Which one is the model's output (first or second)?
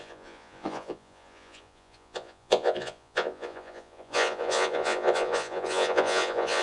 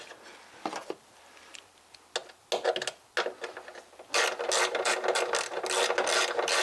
first